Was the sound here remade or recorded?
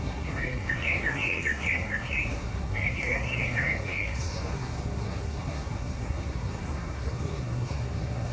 remade